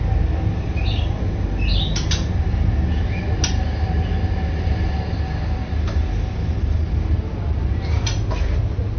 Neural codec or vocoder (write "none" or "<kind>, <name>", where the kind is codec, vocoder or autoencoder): none